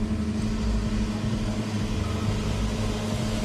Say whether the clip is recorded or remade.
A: recorded